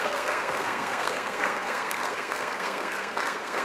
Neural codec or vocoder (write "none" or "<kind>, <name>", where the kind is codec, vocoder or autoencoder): codec, SNAC